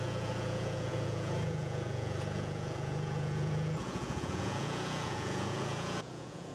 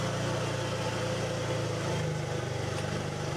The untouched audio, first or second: second